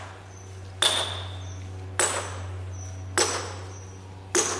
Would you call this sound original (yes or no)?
yes